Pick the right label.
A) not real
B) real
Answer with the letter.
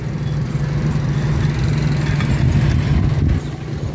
B